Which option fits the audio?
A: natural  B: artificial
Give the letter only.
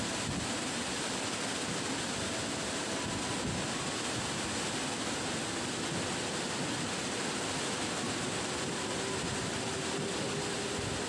A